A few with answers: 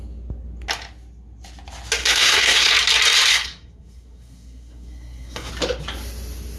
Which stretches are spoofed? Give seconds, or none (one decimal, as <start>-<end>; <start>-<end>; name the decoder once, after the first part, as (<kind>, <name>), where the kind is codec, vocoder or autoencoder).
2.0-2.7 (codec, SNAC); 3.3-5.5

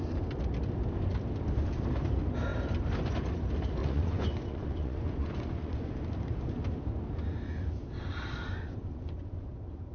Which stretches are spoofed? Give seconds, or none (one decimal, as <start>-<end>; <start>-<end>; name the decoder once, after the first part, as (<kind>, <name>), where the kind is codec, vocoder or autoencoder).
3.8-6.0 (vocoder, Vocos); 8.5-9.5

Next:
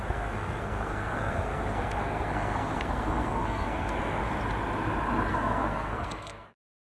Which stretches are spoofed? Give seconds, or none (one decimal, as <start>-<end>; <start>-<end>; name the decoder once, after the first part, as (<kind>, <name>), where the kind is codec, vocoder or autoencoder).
0.0-4.2 (codec, SNAC); 5.3-6.9

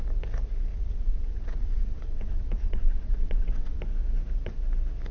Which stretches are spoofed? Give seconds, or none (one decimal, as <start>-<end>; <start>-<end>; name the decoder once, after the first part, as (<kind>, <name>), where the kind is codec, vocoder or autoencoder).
0.7-3.8 (vocoder, WaveNeXt)

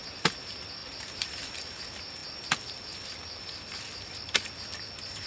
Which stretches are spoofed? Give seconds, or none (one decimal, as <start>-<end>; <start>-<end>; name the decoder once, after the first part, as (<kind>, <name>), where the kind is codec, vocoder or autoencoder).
0.8-1.4 (vocoder, BigVGAN v2)